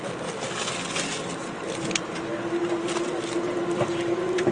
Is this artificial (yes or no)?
no